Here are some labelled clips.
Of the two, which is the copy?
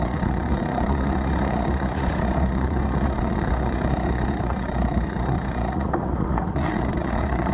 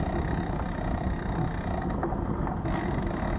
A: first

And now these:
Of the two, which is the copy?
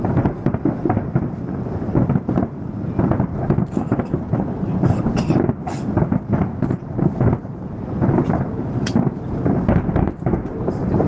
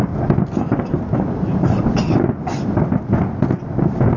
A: first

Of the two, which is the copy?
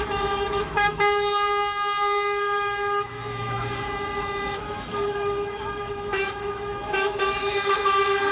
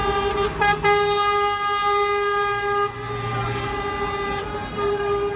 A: first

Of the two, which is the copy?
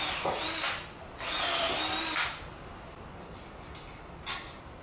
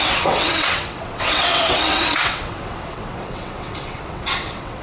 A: second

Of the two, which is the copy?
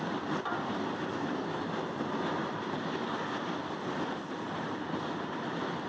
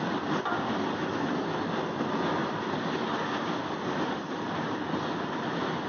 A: first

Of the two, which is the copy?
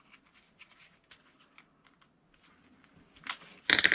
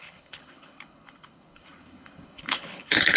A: second